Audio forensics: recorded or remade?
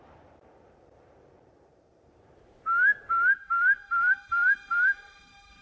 remade